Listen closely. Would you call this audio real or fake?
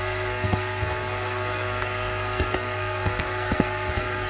fake